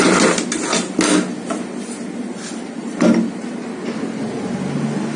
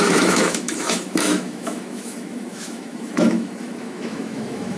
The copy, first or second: second